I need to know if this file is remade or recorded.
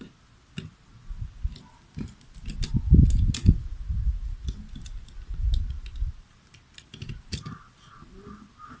recorded